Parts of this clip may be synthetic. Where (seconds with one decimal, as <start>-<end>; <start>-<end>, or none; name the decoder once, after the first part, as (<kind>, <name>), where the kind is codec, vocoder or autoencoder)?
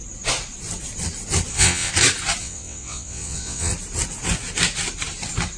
1.5-1.9 (vocoder, WaveNeXt); 2.4-3.7